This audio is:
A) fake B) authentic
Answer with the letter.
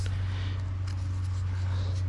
B